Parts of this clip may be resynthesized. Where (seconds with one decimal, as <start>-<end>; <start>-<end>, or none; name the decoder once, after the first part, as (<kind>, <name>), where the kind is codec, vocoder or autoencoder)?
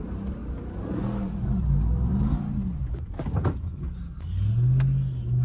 none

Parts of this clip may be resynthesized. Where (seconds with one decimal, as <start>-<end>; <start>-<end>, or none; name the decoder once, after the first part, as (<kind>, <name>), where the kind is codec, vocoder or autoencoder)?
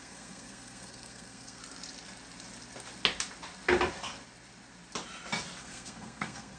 0.0-1.6 (codec, SNAC); 5.6-6.6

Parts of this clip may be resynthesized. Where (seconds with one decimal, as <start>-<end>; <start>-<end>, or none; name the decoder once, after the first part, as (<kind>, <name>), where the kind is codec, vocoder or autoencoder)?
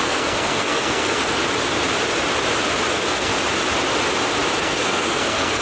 0.0-1.4 (codec, SNAC); 2.9-3.3; 4.6-5.6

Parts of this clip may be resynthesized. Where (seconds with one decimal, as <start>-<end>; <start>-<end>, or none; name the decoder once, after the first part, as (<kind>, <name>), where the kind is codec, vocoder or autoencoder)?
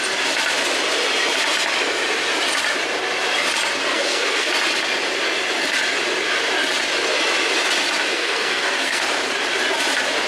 3.9-4.5 (codec, SNAC); 8.1-9.0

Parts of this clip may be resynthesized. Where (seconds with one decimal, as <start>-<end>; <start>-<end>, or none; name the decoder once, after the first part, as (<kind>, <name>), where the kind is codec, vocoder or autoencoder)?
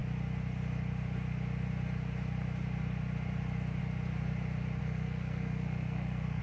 4.8-6.4 (codec, SNAC)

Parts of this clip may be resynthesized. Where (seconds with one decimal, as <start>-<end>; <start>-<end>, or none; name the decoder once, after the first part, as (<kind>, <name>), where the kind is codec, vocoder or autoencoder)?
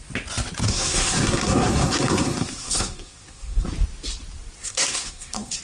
0.7-3.7 (codec, SNAC); 4.6-5.6